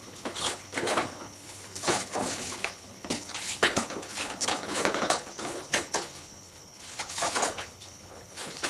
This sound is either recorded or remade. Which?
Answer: remade